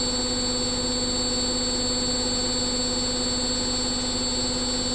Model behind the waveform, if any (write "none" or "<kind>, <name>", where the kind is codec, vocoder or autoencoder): none